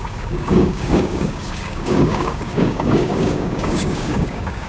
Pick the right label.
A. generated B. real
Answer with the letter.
A